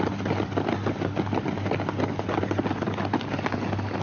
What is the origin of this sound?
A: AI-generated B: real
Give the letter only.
B